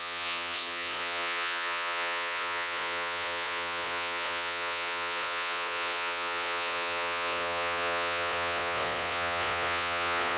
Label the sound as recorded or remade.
remade